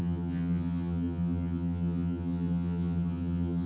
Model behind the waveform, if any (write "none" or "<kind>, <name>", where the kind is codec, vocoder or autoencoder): vocoder, HiFi-GAN